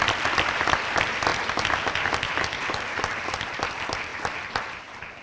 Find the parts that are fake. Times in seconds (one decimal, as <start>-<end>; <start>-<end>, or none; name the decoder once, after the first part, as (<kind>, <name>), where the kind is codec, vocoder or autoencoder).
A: 0.0-1.3 (vocoder, BigVGAN v2); 2.1-4.1; 4.7-5.2